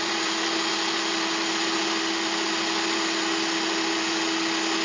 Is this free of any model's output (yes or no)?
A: yes